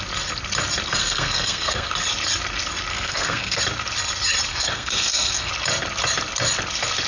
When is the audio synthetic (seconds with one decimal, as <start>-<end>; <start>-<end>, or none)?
1.0-1.9; 2.9-3.6; 4.5-5.5